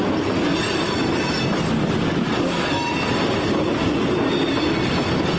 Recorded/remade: recorded